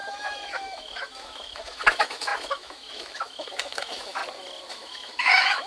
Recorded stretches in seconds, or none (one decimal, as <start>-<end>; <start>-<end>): 4.2-4.7